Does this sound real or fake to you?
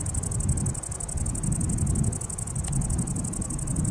real